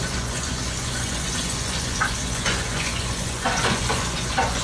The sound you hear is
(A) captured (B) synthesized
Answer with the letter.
B